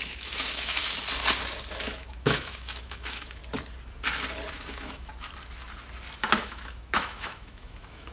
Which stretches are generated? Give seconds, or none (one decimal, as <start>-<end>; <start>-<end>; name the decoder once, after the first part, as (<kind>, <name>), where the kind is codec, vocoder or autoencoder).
0.0-0.8 (autoencoder, DAC-VAE); 1.7-3.4; 4.5-5.1; 6.4-8.1